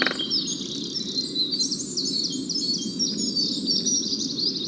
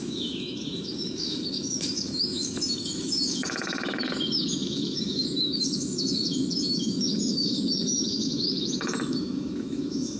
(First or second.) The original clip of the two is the first